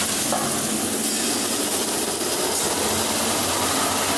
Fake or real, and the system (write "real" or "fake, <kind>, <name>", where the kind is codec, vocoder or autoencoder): real